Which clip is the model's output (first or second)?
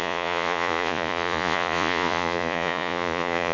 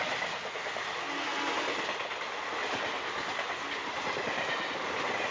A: first